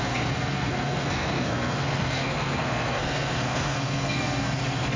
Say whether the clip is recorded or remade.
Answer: remade